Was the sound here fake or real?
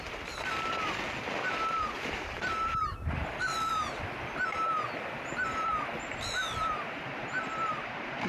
real